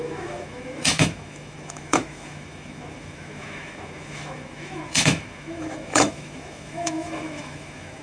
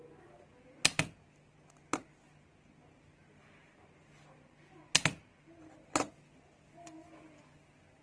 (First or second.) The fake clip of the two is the first